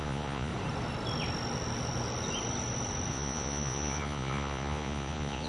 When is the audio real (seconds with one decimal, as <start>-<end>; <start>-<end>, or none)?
0.5-3.1